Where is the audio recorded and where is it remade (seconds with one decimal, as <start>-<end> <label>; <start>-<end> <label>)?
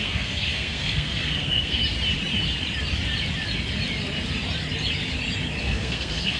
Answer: 0.0-1.8 remade; 1.8-5.6 recorded; 5.6-6.4 remade